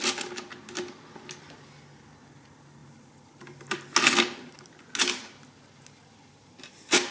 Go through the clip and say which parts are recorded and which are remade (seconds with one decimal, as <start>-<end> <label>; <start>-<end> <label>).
0.0-7.1 recorded